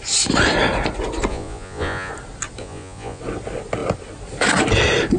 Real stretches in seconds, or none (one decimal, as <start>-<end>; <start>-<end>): 0.0-1.3; 2.1-2.6; 3.2-5.2